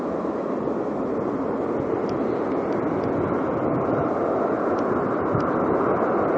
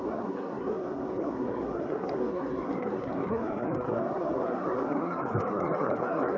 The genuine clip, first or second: first